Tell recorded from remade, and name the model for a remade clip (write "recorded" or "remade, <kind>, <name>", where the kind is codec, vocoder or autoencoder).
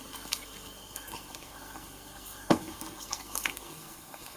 remade, codec, SNAC